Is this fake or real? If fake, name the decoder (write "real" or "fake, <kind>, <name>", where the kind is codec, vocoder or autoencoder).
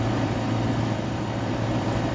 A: fake, vocoder, BigVGAN v2